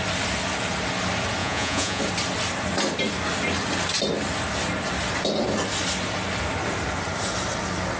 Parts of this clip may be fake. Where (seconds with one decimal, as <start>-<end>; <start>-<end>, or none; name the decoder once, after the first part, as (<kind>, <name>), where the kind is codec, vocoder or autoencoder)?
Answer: 1.4-2.0 (vocoder, Vocos)

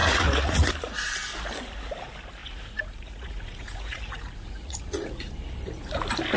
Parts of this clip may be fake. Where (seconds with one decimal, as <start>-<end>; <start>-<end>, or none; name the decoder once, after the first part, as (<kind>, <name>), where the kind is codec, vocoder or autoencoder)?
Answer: 0.0-0.7 (vocoder, Vocos); 2.4-5.3

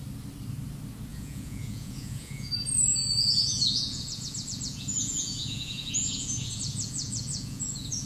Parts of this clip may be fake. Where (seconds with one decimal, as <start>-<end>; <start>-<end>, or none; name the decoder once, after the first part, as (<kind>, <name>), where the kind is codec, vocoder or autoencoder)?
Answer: 1.1-2.5 (vocoder, Vocos); 2.9-8.1

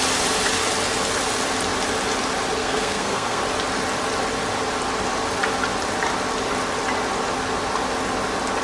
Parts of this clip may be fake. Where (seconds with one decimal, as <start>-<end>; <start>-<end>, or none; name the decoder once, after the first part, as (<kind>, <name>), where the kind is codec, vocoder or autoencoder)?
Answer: 2.6-3.4 (codec, SNAC)

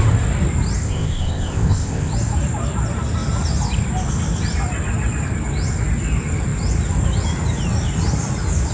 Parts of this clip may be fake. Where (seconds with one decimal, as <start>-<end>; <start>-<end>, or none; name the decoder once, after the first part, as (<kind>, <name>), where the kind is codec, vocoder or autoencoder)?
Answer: 0.8-2.1 (codec, ZipCodec)